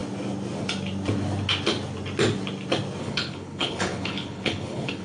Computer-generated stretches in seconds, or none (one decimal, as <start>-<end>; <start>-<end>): 3.0-5.0